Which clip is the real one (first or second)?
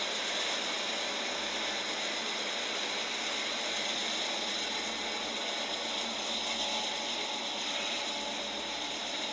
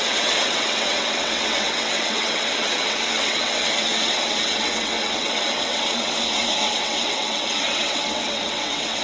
first